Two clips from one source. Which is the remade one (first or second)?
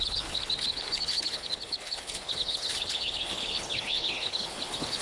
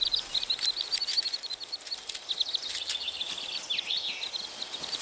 first